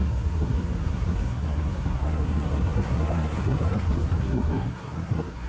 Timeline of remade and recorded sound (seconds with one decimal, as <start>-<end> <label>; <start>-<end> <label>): 0.0-5.5 remade